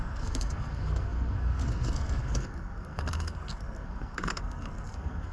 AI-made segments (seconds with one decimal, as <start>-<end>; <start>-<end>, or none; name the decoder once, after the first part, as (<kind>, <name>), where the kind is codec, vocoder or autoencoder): 0.0-5.3 (codec, SNAC)